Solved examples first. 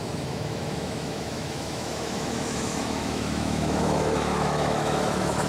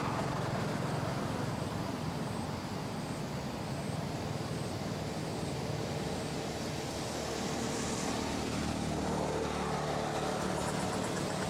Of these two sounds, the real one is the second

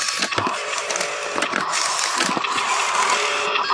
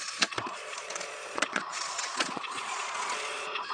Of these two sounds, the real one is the first